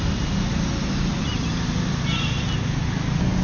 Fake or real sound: real